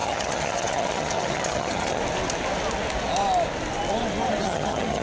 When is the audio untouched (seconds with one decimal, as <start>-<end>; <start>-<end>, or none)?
2.0-4.4